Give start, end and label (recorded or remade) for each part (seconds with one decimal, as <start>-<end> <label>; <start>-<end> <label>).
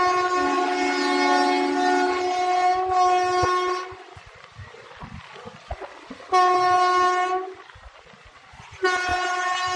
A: 0.0-9.1 recorded; 9.1-9.8 remade